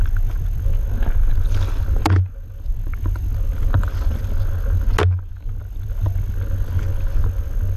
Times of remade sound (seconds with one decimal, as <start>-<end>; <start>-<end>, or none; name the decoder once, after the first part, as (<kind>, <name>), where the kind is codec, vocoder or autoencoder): none